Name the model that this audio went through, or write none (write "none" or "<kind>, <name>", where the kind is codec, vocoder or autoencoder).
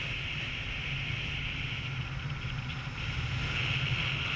none